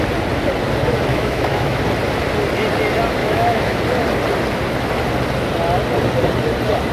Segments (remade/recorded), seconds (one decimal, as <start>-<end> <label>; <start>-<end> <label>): 0.0-1.1 recorded; 1.1-1.8 remade; 1.8-3.2 recorded; 3.2-3.8 remade; 3.8-6.9 recorded